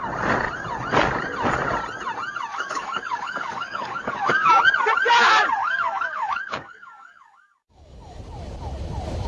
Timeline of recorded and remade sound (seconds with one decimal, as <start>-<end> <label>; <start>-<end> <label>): 0.0-2.5 recorded; 2.5-4.6 remade; 4.6-5.6 recorded; 5.6-8.2 remade; 8.2-9.3 recorded

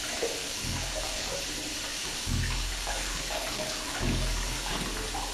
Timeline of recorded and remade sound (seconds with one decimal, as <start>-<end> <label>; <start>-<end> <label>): 0.0-0.4 recorded; 0.4-1.4 remade; 1.4-1.9 recorded; 1.9-4.7 remade; 4.7-5.3 recorded

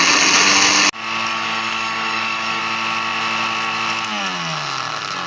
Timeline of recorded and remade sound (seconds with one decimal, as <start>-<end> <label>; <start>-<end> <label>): 0.0-1.3 recorded; 1.3-2.6 remade; 2.6-5.3 recorded